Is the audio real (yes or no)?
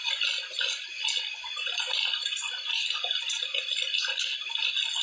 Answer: yes